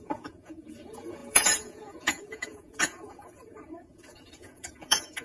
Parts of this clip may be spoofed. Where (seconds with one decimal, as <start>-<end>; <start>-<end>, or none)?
0.0-5.2